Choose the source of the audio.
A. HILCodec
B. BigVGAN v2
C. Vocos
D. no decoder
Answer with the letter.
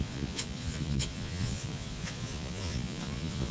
C